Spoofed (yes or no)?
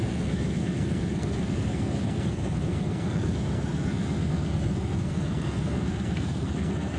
yes